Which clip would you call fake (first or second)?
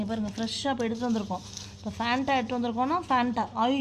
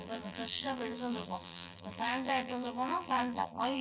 second